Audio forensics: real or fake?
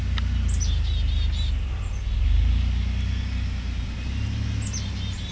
real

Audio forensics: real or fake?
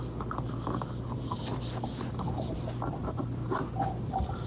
real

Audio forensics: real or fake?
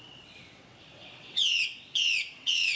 fake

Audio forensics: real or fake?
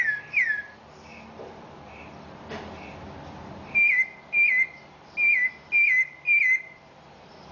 real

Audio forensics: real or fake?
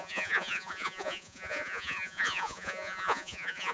fake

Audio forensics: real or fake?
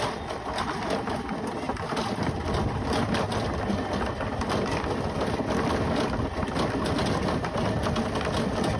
real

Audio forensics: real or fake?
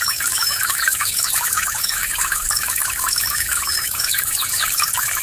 fake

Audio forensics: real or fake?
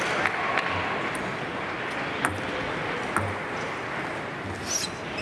real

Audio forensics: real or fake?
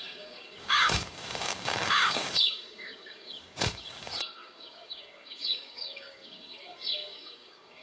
fake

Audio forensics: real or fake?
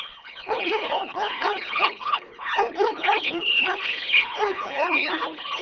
fake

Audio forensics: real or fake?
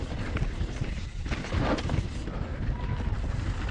real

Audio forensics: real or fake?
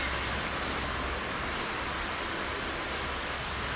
real